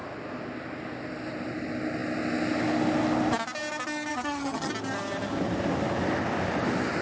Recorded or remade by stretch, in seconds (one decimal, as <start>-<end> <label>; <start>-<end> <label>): 0.0-4.1 recorded; 4.1-4.7 remade; 4.7-7.0 recorded